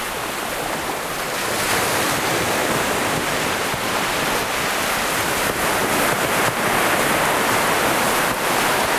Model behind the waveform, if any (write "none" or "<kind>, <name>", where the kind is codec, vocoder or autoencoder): none